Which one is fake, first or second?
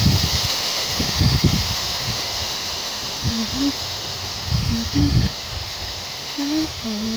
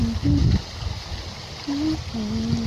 first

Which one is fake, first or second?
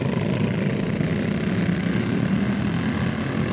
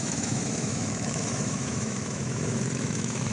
second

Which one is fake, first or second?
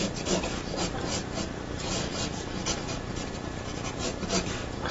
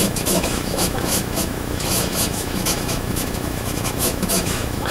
second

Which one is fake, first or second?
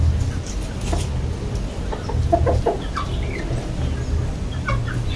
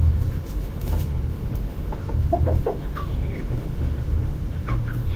second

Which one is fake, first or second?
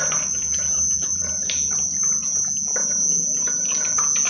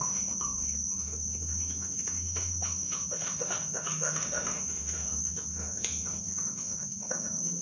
second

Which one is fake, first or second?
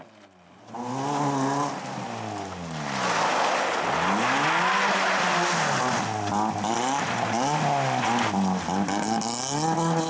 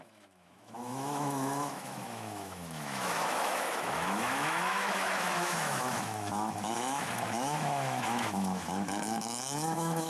second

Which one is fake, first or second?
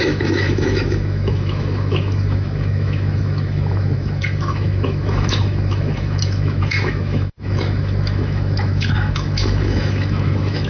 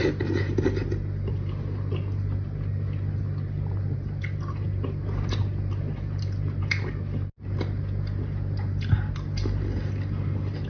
first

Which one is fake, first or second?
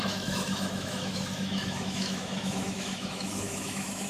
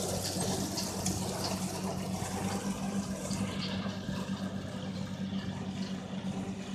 first